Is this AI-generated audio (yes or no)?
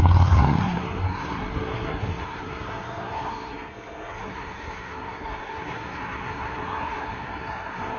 yes